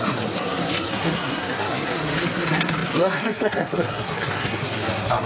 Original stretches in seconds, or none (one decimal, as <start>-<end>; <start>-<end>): none